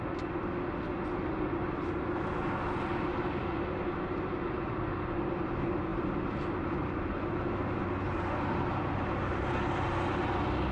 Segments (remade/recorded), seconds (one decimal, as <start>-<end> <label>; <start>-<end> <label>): 0.0-10.7 recorded